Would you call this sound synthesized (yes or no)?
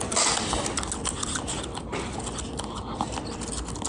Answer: no